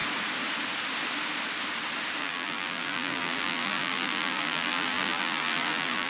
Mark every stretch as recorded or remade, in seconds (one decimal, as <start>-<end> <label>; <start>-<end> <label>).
0.0-2.2 recorded; 2.2-6.1 remade